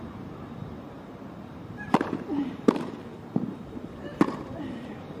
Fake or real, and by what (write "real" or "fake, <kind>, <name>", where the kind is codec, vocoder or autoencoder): fake, vocoder, BigVGAN v2